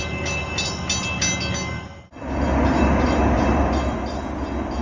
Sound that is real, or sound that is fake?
real